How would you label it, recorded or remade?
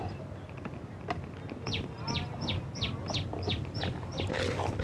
recorded